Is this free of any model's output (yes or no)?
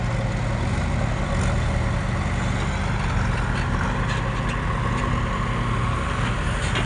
yes